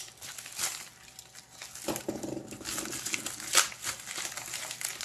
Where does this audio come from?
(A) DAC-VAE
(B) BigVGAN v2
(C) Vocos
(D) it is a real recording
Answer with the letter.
D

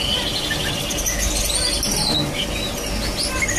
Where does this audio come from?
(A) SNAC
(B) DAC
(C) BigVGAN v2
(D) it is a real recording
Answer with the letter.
D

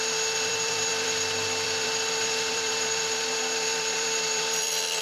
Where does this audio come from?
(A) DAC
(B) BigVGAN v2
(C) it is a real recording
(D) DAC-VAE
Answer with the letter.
B